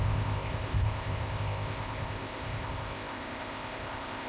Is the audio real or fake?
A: fake